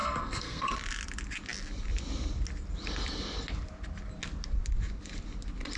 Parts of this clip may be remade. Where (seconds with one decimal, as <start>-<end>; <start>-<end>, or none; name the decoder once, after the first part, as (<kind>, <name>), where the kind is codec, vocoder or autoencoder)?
0.0-0.7 (codec, SNAC)